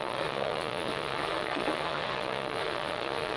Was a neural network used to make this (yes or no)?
yes